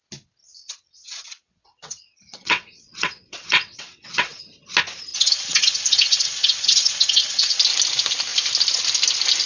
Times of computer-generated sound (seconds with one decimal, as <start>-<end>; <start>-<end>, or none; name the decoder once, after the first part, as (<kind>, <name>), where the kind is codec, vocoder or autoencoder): 0.4-4.4 (vocoder, WaveNeXt); 5.1-7.6